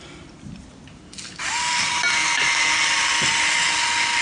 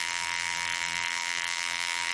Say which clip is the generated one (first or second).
second